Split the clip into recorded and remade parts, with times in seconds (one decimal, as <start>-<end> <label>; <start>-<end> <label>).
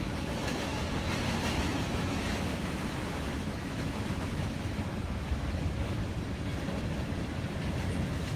0.0-0.7 remade; 0.7-1.5 recorded; 1.5-6.0 remade; 6.0-7.9 recorded; 7.9-8.4 remade